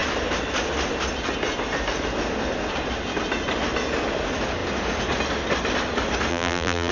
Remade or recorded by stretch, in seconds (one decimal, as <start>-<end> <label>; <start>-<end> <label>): 0.0-6.3 recorded; 6.3-6.9 remade